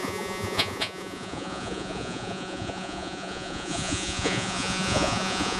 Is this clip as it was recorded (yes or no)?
no